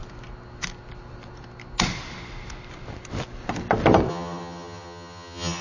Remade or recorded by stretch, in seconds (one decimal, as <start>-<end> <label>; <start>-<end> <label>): 0.0-4.1 recorded; 4.1-5.6 remade